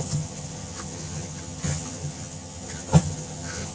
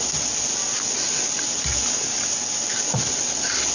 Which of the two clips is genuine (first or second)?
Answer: second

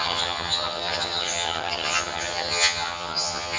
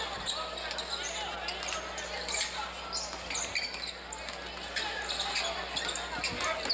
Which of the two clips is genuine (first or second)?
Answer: second